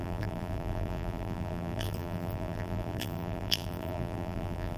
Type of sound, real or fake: fake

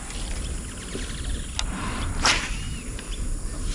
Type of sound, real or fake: real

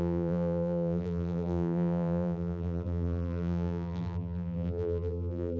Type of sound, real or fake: fake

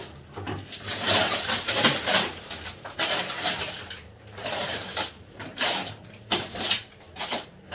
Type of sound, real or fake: fake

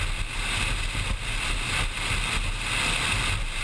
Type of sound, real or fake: real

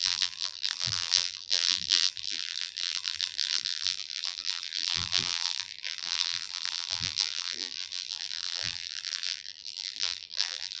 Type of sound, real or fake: fake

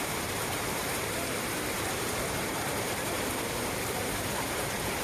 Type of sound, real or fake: fake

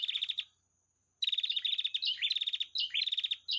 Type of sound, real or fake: real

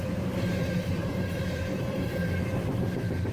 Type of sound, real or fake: fake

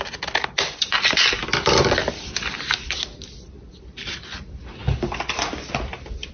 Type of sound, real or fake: real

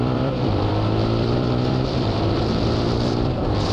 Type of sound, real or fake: fake